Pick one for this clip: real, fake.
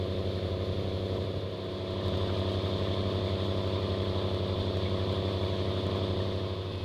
real